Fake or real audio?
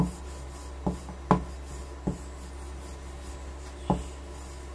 real